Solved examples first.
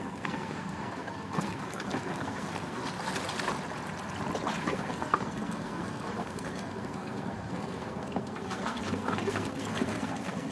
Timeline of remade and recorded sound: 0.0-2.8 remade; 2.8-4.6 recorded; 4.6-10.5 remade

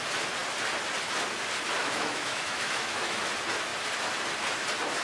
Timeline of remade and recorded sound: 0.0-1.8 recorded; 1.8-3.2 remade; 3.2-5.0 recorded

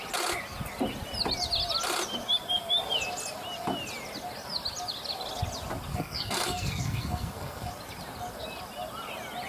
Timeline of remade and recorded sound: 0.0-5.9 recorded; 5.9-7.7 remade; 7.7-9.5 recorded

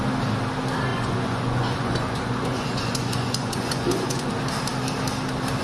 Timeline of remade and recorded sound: 0.0-0.9 recorded; 0.9-4.3 remade; 4.3-5.6 recorded